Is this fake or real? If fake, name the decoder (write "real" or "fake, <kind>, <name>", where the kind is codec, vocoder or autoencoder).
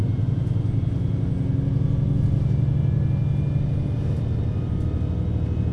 real